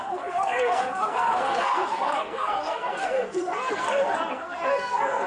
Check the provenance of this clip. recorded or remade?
remade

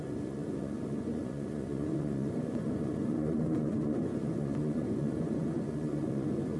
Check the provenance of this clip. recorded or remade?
remade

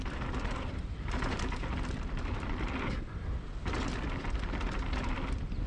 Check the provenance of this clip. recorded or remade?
recorded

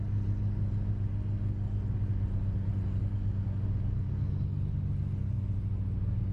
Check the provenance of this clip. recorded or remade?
recorded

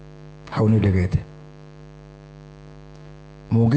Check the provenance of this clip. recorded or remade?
remade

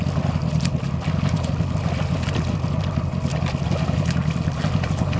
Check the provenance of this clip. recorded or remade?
recorded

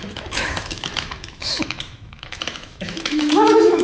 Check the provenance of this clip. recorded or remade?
remade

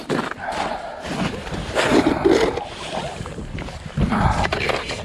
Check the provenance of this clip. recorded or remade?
recorded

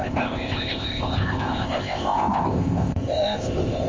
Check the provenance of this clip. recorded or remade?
remade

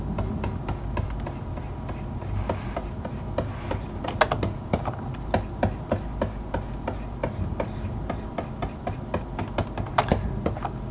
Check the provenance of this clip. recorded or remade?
recorded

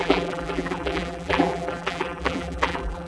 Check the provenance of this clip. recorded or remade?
remade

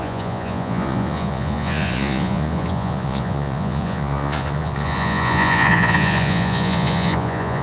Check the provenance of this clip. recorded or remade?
remade